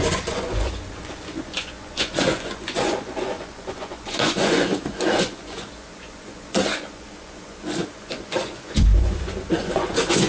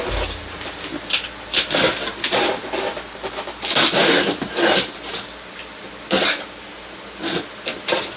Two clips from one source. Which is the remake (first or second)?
first